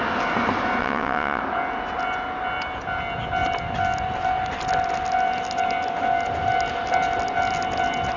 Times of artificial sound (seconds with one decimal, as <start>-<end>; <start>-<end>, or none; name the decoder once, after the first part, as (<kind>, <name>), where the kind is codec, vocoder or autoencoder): 0.8-1.4 (vocoder, WaveNeXt)